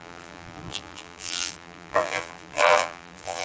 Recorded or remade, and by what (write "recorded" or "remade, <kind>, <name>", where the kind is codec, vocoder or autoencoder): remade, vocoder, BigVGAN v2